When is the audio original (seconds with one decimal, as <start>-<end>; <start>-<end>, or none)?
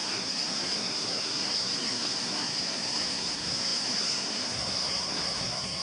none